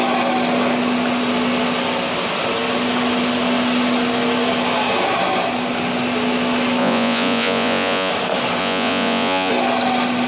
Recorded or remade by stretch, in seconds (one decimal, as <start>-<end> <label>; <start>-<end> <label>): 0.0-6.8 recorded; 6.8-8.1 remade; 8.1-8.6 recorded; 8.6-9.5 remade; 9.5-10.3 recorded